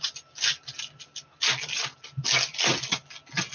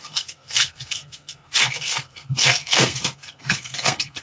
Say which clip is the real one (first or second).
first